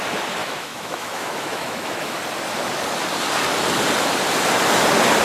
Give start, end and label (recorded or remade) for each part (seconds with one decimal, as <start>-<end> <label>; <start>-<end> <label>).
0.0-0.4 recorded; 0.4-2.2 remade; 2.2-5.2 recorded